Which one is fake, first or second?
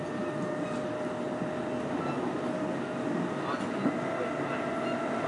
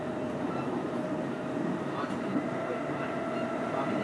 second